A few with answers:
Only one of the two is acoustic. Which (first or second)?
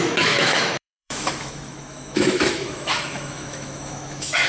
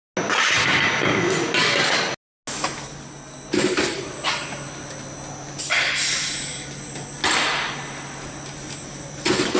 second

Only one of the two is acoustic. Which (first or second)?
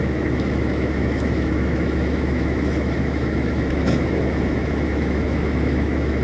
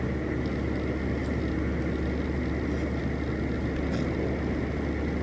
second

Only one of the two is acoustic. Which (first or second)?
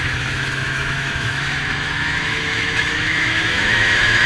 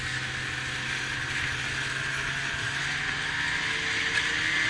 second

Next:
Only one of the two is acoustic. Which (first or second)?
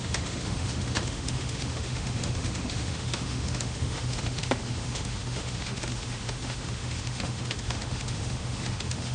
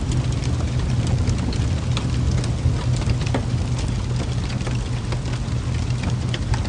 second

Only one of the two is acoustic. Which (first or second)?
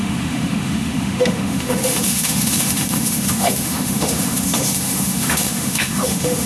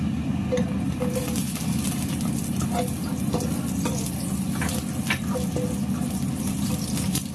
second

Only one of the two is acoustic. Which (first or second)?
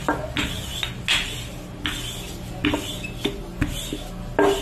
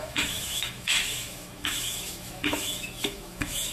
first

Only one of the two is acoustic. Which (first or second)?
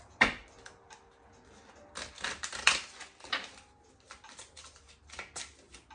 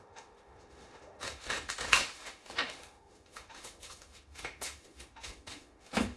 first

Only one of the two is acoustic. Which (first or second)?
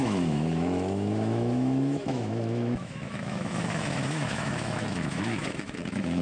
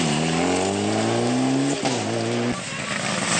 second